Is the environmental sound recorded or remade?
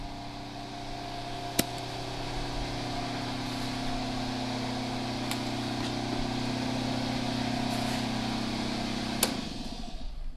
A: recorded